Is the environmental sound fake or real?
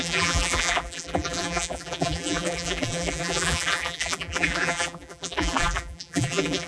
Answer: fake